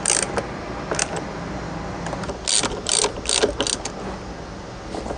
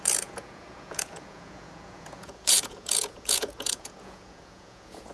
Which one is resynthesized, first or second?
second